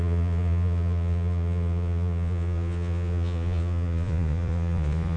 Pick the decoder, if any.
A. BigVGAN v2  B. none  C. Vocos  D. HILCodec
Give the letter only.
C